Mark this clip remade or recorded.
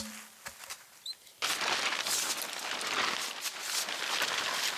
recorded